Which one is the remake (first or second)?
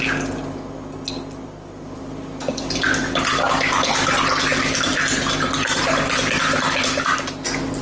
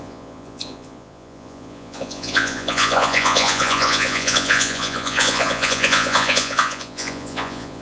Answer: second